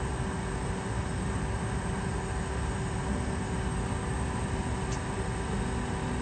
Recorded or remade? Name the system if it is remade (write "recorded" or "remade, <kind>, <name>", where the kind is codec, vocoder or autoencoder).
recorded